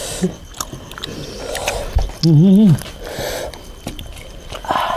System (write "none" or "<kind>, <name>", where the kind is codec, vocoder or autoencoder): none